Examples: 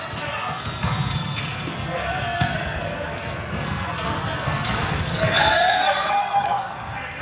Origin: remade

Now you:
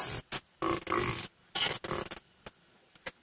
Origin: recorded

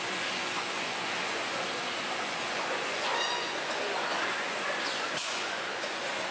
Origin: remade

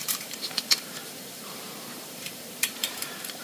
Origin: remade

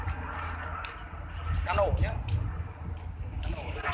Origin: recorded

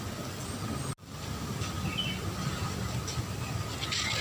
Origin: recorded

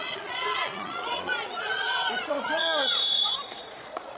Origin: remade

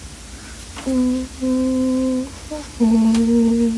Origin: recorded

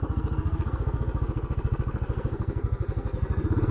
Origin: remade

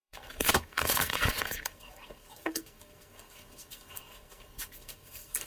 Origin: remade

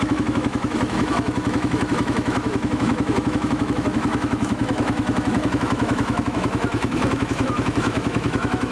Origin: remade